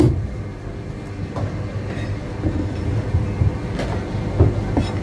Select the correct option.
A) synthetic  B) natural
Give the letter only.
B